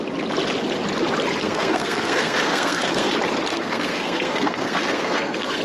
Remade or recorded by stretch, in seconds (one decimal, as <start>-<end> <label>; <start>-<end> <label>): 0.0-1.4 recorded; 1.4-3.1 remade; 3.1-3.5 recorded; 3.5-5.6 remade